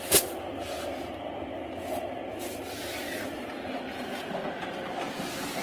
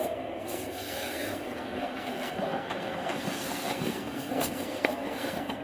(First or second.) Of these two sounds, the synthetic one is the second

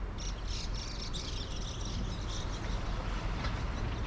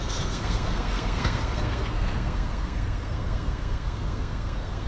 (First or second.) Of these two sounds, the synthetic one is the second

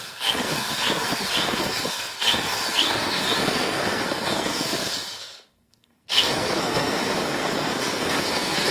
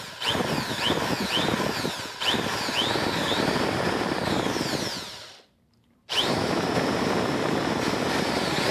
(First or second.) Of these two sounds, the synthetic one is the first